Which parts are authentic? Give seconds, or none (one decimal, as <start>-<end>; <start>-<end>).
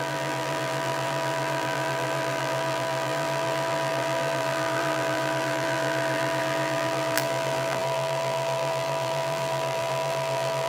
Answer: none